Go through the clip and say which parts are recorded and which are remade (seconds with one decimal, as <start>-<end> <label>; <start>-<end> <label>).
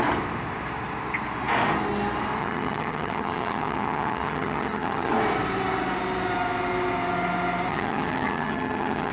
0.0-2.4 recorded; 2.4-5.1 remade; 5.1-7.7 recorded; 7.7-9.1 remade